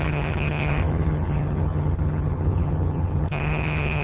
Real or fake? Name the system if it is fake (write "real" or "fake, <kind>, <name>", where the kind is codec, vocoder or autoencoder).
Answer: fake, vocoder, HiFi-GAN